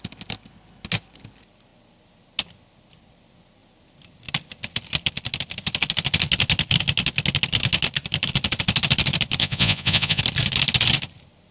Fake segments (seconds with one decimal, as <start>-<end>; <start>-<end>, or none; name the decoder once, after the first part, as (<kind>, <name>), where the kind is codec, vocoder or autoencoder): 9.4-10.2 (vocoder, Vocos)